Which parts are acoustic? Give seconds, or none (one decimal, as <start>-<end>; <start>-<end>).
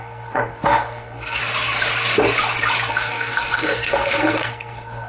1.4-2.9